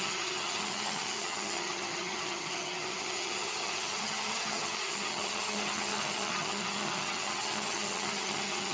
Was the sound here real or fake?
fake